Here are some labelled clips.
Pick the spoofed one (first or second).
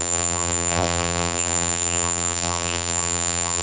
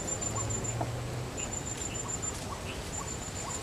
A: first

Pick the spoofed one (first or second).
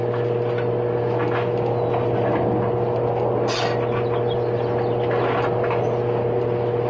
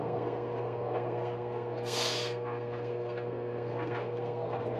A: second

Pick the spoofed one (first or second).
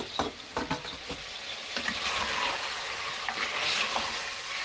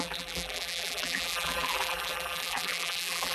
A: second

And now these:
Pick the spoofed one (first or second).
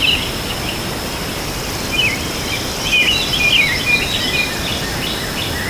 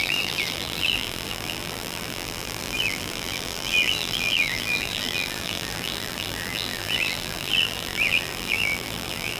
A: second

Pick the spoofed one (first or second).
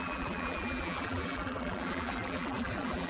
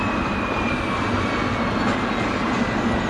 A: first